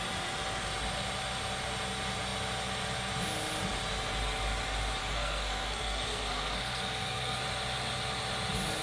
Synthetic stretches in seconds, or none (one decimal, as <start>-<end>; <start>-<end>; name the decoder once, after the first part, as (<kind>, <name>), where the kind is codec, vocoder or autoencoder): 5.0-7.4 (codec, SNAC)